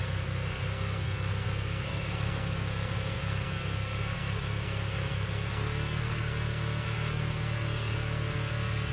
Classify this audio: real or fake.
fake